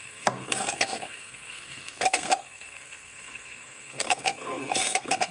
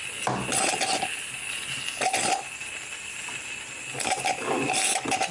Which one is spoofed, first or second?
first